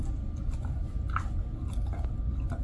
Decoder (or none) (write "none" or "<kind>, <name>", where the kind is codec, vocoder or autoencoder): none